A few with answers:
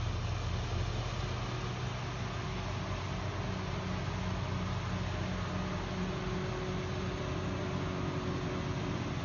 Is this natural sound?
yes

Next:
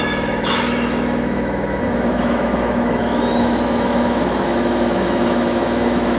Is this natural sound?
no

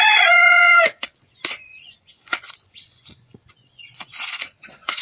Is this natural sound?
no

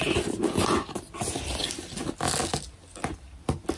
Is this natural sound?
yes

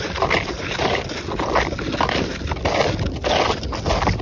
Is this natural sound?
yes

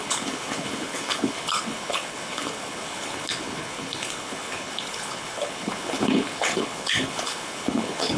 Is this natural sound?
no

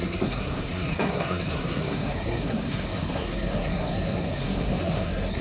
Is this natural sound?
no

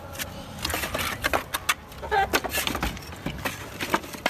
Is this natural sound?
yes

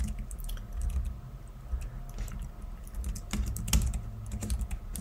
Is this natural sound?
yes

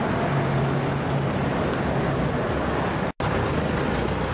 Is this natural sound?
yes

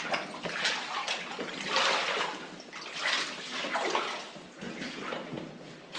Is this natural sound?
yes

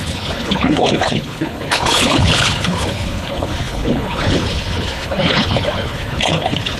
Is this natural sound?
no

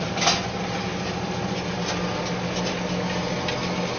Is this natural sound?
yes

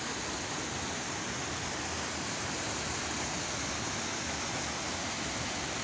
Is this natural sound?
yes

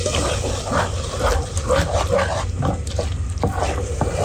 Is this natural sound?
yes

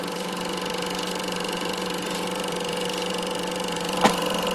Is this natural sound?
no